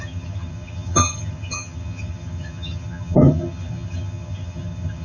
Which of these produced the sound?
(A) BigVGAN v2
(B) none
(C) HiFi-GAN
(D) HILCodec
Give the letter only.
C